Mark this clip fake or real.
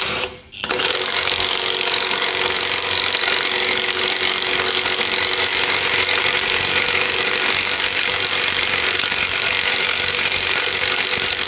fake